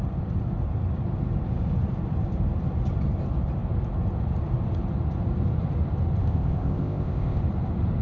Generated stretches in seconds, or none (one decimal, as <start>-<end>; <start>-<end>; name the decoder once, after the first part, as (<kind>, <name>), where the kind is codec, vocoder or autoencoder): 6.2-7.4 (codec, ZipCodec)